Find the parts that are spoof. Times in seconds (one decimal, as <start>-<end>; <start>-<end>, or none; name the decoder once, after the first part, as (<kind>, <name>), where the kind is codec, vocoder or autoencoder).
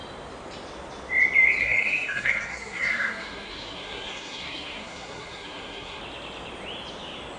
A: 1.6-6.0 (codec, SNAC)